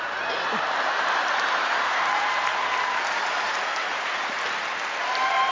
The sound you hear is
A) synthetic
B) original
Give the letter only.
A